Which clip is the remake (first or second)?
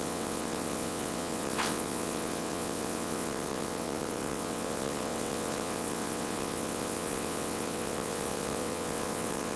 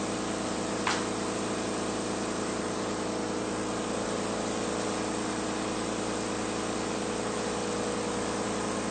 first